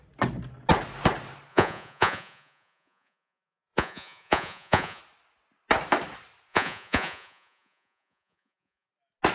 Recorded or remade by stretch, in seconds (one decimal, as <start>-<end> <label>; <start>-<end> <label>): 0.0-1.5 recorded; 1.5-5.0 remade; 5.0-6.5 recorded; 6.5-8.9 remade; 8.9-9.3 recorded